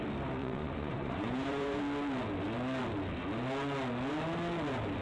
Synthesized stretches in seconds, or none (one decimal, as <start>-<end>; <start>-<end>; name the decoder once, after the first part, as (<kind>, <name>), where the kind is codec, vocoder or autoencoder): 0.4-1.8 (vocoder, Vocos)